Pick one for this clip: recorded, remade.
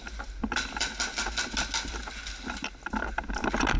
recorded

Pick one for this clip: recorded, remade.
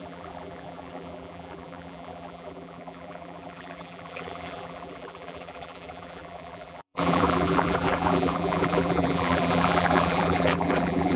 remade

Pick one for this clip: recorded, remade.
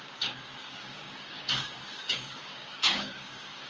remade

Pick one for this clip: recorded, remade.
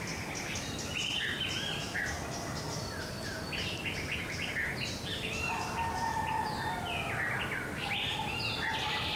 recorded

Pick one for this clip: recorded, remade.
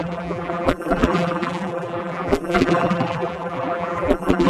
remade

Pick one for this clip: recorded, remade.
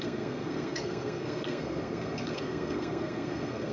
remade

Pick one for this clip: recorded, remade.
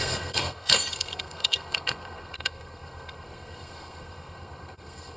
remade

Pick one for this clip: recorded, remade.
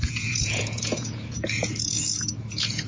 remade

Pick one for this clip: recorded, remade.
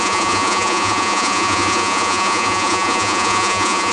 remade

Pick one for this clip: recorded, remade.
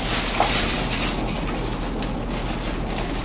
recorded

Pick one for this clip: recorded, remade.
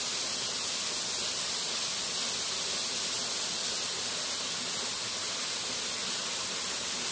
recorded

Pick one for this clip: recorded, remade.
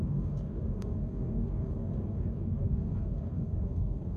remade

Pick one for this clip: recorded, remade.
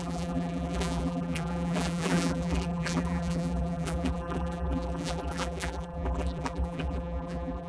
remade